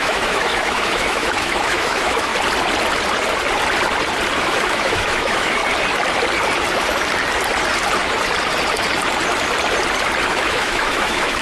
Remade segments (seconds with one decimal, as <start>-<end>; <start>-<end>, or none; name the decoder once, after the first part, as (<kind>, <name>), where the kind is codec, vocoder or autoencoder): 0.0-2.3 (autoencoder, DAC-VAE); 4.4-5.6; 10.3-11.4